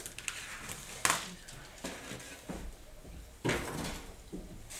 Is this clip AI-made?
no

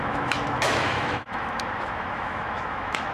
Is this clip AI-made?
yes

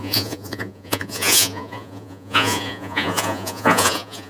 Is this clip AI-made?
yes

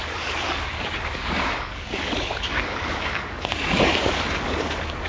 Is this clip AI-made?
yes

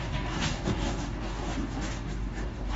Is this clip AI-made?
yes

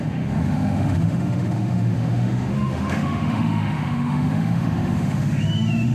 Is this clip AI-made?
yes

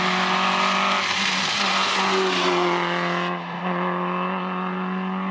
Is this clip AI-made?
no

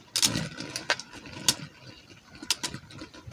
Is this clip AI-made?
no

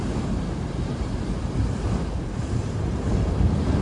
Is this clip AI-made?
yes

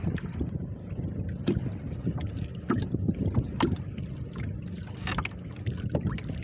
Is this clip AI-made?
no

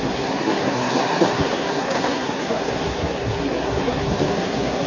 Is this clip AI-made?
yes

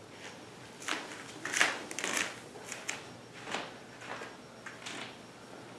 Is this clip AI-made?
no